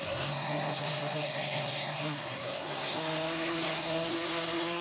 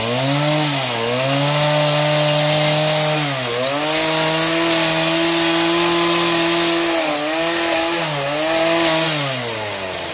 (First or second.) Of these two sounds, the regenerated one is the first